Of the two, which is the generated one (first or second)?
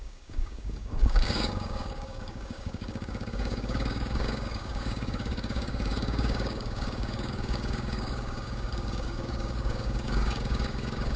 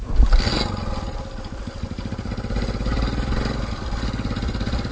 first